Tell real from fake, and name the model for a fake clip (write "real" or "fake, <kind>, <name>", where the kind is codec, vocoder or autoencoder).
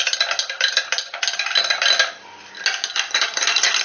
real